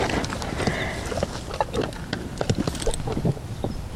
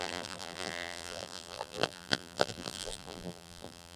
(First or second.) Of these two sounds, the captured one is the first